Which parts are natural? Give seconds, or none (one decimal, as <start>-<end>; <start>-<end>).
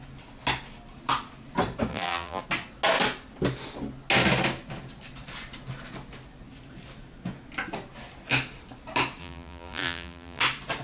0.0-1.9; 2.4-9.2; 10.4-10.8